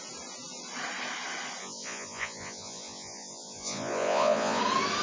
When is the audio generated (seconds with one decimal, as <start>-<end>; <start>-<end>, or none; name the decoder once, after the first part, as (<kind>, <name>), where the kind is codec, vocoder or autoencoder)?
1.6-4.6 (vocoder, Vocos)